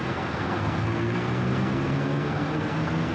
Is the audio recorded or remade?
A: remade